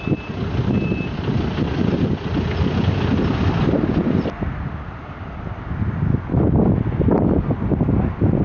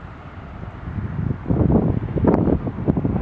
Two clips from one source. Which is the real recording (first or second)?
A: first